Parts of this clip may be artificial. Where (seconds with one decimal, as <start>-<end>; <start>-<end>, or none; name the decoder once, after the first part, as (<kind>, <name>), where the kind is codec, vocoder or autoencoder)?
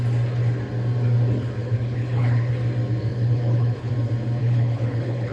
1.6-2.5 (codec, HILCodec); 3.1-3.9; 4.4-5.3